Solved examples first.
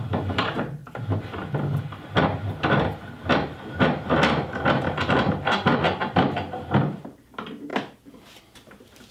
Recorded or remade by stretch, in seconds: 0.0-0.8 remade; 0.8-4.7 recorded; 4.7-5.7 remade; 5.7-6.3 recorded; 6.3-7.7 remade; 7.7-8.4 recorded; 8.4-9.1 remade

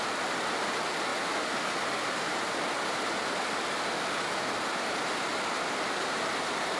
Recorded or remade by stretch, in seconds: 0.0-6.8 recorded

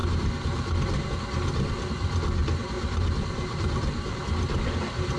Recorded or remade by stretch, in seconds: 0.0-1.1 remade; 1.1-2.4 recorded; 2.4-4.2 remade; 4.2-5.2 recorded

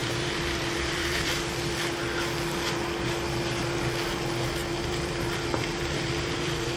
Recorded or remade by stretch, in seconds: 0.0-1.3 remade; 1.3-4.6 recorded; 4.6-6.8 remade

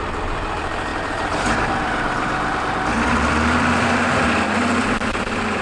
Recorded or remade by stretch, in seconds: 0.0-5.6 remade